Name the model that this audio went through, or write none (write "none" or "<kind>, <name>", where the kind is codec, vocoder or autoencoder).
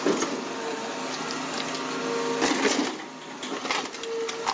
none